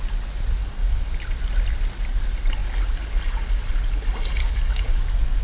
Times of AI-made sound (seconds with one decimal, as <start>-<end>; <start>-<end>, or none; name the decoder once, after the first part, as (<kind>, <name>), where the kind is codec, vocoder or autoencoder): 0.6-1.1 (codec, DAC); 4.4-5.4